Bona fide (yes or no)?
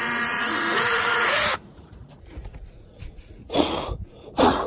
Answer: no